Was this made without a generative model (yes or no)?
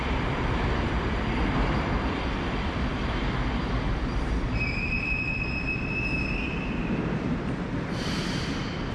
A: no